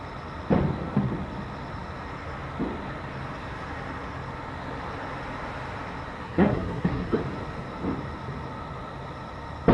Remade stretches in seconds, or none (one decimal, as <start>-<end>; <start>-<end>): 6.2-7.2